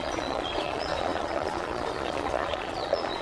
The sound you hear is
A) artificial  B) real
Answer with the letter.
A